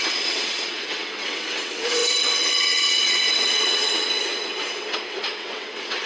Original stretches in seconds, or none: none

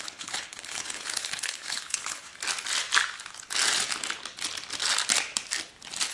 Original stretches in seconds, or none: 2.3-6.1

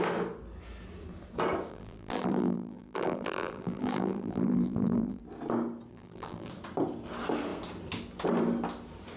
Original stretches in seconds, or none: 0.0-1.7; 5.2-5.9; 6.5-9.2

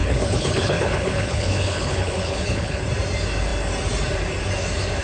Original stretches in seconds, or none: 2.8-5.0

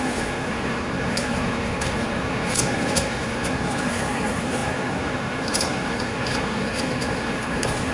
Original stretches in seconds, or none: none

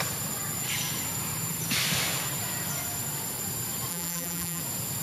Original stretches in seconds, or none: 0.0-3.9; 4.6-5.0

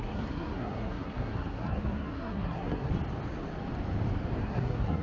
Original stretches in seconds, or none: 2.9-4.4

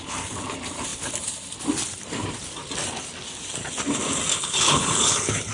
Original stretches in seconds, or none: 0.0-4.3